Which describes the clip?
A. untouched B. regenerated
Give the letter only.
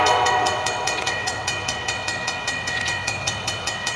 B